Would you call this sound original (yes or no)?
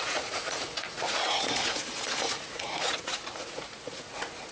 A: no